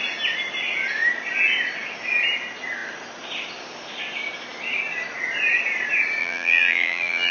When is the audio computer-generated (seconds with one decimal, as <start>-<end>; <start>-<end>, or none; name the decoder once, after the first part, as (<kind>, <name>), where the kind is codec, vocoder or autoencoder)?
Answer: 6.2-7.3 (vocoder, BigVGAN v2)